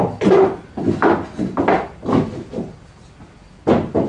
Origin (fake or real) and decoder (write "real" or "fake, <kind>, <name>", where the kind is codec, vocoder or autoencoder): real